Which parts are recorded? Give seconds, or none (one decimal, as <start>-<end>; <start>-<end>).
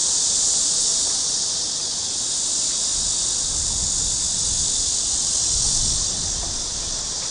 0.0-7.3